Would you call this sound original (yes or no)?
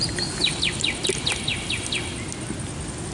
yes